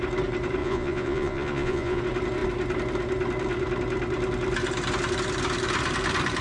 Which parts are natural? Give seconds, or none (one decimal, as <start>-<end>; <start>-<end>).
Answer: 0.0-0.6; 2.0-6.4

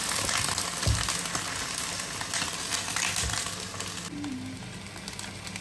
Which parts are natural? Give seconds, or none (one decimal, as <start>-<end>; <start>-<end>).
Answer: 0.0-5.6

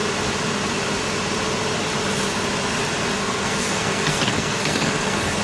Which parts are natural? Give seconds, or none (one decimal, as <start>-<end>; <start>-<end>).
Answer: 0.0-3.2